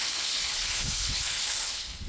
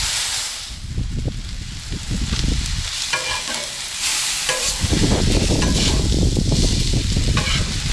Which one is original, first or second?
second